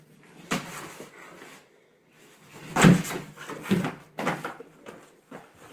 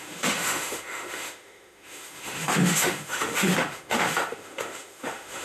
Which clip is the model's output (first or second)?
second